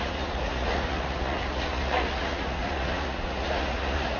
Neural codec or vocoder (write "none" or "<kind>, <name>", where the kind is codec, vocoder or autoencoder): vocoder, Vocos